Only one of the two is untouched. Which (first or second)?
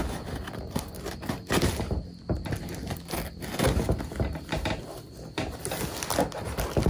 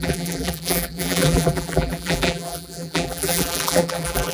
first